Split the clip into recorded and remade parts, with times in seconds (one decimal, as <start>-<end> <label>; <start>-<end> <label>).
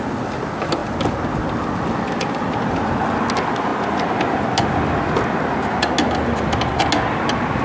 0.0-7.6 recorded